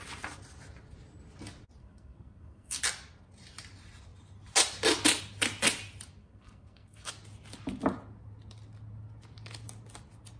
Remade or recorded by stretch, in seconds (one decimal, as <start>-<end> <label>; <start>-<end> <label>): 0.0-1.8 recorded; 1.8-2.8 remade; 2.8-6.2 recorded; 6.2-7.1 remade; 7.1-10.4 recorded